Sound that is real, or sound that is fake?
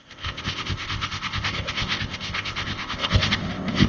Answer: fake